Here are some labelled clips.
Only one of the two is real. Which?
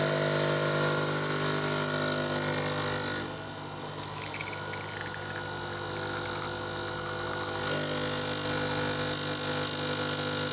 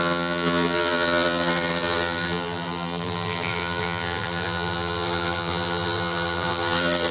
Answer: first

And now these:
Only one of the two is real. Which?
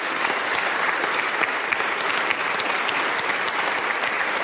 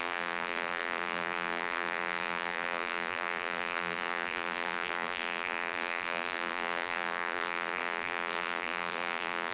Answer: first